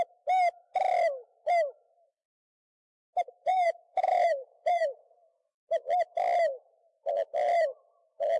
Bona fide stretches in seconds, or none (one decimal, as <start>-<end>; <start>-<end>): 0.0-3.5; 5.5-8.4